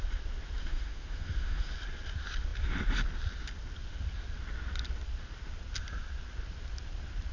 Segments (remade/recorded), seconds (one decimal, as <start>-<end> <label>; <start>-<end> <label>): 0.0-0.6 recorded; 0.6-1.7 remade; 1.7-7.3 recorded